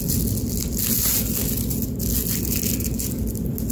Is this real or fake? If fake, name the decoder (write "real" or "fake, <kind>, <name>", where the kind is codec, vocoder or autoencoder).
real